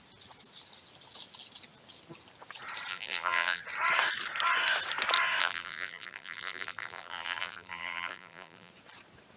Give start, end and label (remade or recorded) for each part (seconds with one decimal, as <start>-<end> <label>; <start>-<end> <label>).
0.0-2.9 recorded; 2.9-3.6 remade; 3.6-5.4 recorded; 5.4-8.7 remade; 8.7-9.4 recorded